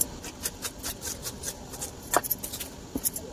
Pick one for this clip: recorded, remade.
recorded